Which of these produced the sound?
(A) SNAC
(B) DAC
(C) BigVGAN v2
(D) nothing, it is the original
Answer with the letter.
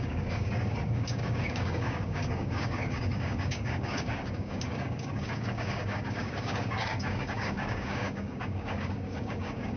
B